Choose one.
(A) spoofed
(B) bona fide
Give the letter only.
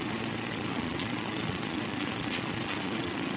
A